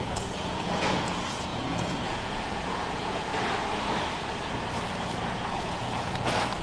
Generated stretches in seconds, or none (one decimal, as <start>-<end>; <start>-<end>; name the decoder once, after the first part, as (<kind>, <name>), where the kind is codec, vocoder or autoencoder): 0.0-3.3 (vocoder, Vocos); 5.3-6.6

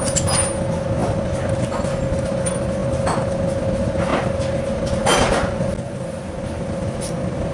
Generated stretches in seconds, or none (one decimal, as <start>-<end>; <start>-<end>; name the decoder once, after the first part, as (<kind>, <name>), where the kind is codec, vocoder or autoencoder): none

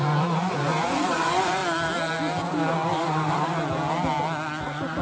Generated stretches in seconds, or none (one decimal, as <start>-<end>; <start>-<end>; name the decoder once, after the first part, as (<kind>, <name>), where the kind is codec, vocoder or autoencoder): 0.0-1.6 (vocoder, Vocos); 4.6-5.0

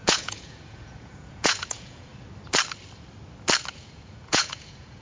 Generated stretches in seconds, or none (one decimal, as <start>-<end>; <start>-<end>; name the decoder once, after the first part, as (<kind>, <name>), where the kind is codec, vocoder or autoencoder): 0.0-2.1 (vocoder, Vocos); 3.7-5.0